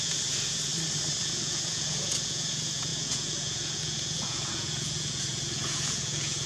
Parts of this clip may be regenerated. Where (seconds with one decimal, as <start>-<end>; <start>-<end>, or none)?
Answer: 0.0-0.7; 1.3-6.5